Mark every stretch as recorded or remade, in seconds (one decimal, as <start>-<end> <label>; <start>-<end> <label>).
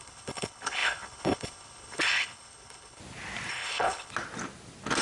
0.0-3.0 remade; 3.0-3.5 recorded; 3.5-4.1 remade; 4.1-5.0 recorded